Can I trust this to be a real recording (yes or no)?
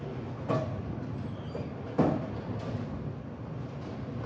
yes